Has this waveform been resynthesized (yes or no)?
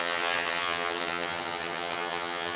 yes